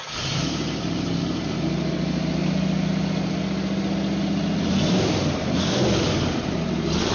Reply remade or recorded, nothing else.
recorded